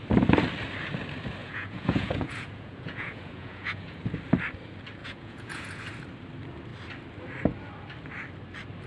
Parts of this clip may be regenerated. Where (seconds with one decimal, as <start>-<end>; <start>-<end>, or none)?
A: 1.4-4.0; 5.0-5.8